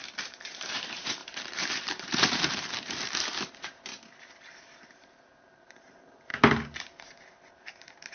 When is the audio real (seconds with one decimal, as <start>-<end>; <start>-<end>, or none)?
3.9-4.5; 6.3-6.8